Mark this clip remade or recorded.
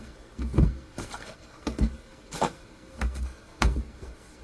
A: remade